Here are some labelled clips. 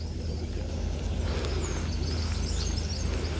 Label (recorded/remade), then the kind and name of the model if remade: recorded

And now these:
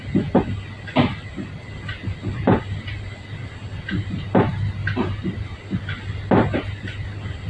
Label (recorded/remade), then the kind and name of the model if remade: recorded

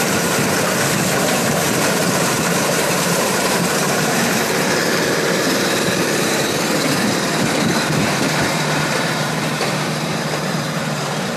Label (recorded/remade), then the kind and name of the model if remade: remade, vocoder, BigVGAN v2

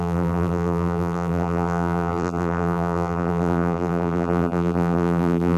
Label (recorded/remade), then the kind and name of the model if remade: remade, vocoder, BigVGAN v2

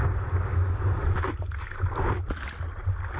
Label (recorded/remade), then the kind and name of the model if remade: recorded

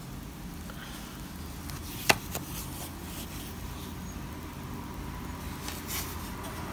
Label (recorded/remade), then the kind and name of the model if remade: recorded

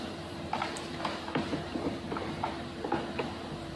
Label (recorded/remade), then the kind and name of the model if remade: remade, vocoder, BigVGAN v2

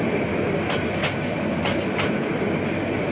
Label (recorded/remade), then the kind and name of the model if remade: recorded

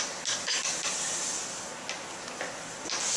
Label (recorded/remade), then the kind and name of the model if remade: recorded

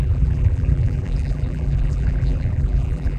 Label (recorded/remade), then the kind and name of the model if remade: remade, vocoder, BigVGAN v2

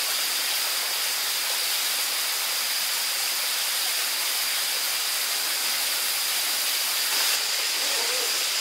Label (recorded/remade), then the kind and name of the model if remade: recorded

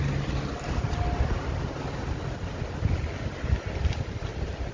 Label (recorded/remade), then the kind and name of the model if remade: recorded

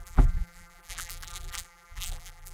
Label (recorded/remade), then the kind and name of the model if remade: remade, vocoder, BigVGAN v2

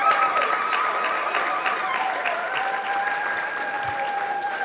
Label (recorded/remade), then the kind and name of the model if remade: remade, vocoder, BigVGAN v2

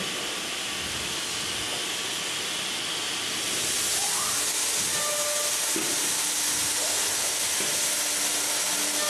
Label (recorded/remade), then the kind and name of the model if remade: recorded